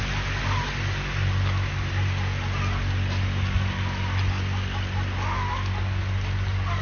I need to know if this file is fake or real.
real